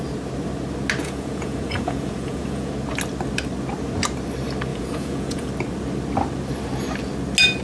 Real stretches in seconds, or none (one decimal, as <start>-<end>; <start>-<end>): 0.0-1.0; 2.7-4.7; 5.5-7.6